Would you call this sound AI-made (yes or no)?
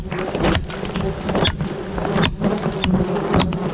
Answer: no